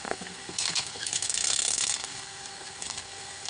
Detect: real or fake fake